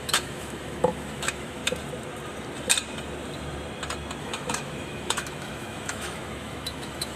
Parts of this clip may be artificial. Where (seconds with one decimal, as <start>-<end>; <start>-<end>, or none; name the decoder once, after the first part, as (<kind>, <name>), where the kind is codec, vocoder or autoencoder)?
0.0-1.6 (autoencoder, DAC-VAE); 4.2-7.2